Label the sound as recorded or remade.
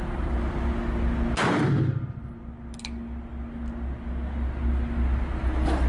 recorded